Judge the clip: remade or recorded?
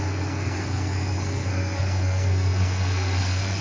remade